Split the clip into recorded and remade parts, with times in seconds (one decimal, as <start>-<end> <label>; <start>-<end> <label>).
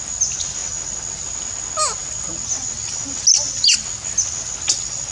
0.0-5.1 recorded